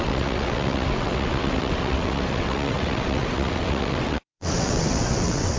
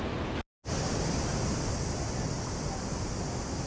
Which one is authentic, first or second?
second